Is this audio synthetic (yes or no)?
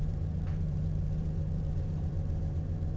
yes